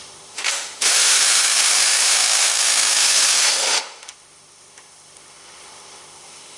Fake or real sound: fake